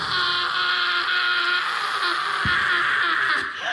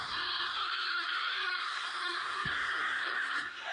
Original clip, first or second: first